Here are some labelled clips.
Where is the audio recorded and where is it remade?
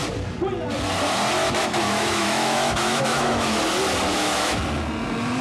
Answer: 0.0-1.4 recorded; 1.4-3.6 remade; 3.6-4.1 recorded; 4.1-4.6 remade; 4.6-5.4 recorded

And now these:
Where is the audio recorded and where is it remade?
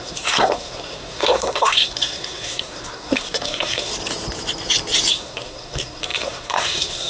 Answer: 0.0-3.9 remade; 3.9-5.1 recorded; 5.1-7.1 remade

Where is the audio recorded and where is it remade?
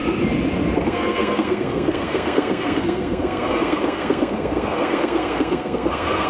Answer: 0.0-0.8 recorded; 0.8-6.3 remade